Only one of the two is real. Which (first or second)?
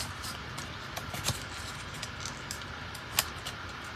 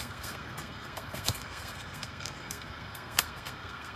first